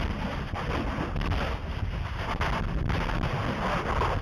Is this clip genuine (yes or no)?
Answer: yes